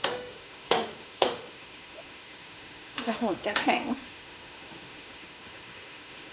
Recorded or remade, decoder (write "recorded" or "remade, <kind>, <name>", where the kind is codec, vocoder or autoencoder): remade, autoencoder, DAC-VAE